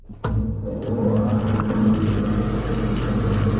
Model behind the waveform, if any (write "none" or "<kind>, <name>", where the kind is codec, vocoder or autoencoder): none